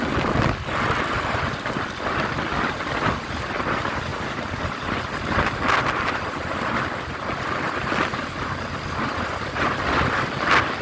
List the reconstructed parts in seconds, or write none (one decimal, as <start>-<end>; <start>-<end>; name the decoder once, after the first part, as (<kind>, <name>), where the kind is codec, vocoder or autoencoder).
4.1-6.7 (vocoder, BigVGAN v2)